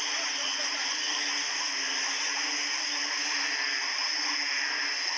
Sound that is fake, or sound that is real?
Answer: real